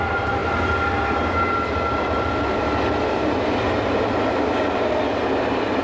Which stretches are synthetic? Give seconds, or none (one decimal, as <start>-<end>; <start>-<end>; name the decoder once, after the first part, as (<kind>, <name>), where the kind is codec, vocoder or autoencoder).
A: none